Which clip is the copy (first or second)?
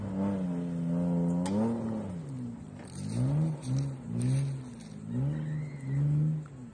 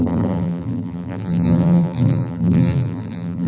second